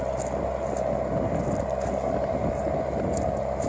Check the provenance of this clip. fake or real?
real